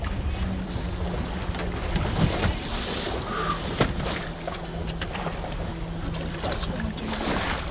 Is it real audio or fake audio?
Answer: real